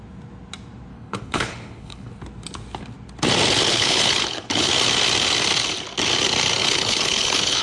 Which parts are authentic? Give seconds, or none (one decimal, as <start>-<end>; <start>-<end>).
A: 0.0-0.9; 2.1-3.7; 4.7-6.6